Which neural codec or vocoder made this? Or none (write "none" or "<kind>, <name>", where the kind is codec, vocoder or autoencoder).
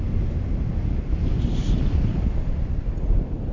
none